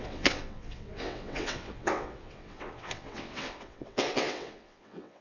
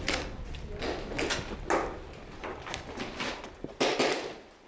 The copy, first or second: first